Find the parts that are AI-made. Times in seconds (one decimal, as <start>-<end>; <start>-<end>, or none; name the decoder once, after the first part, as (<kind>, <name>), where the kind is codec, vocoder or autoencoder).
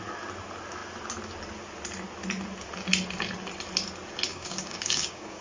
4.3-5.4 (codec, DAC)